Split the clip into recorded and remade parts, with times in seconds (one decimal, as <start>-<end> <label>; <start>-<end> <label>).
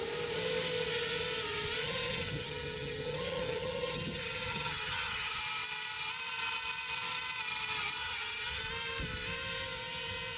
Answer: 0.0-1.8 recorded; 1.8-5.4 remade; 5.4-8.0 recorded; 8.0-8.6 remade; 8.6-10.4 recorded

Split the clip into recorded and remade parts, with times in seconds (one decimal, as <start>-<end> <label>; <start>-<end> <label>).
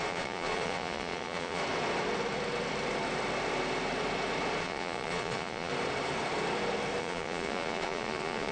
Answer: 0.0-1.6 remade; 1.6-4.6 recorded; 4.6-5.7 remade; 5.7-7.0 recorded; 7.0-8.5 remade